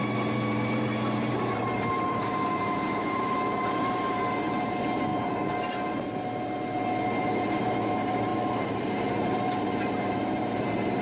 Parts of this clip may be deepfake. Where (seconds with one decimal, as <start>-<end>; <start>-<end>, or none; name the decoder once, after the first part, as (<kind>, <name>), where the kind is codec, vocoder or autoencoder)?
0.0-5.1 (vocoder, BigVGAN v2); 7.2-11.0